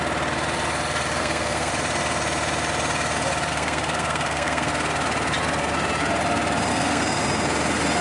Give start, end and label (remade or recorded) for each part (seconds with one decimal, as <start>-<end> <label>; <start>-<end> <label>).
0.0-1.2 recorded; 1.2-1.7 remade; 1.7-3.5 recorded; 3.5-4.7 remade; 4.7-6.7 recorded; 6.7-7.2 remade; 7.2-8.0 recorded